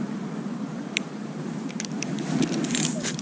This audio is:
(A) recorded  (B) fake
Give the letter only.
A